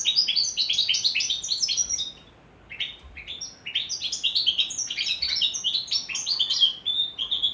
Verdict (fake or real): real